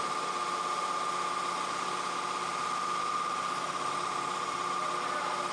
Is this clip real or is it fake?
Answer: real